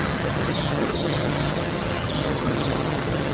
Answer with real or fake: fake